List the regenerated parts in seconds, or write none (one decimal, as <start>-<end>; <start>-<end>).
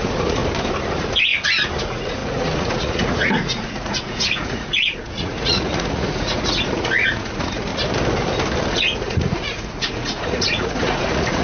0.0-0.4; 0.9-1.3; 1.8-7.7; 8.7-11.4